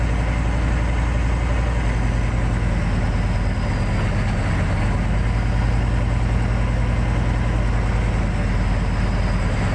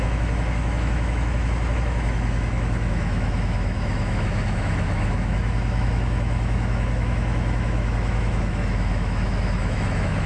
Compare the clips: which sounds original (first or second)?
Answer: first